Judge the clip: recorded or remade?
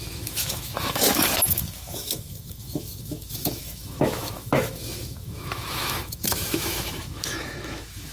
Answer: remade